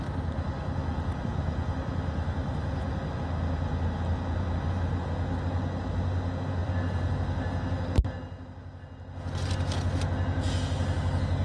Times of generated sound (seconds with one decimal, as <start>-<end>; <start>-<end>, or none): 6.6-7.1

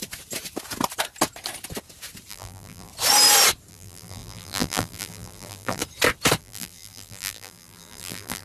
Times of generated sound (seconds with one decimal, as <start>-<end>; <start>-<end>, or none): 2.3-2.9; 3.7-5.8; 6.4-8.4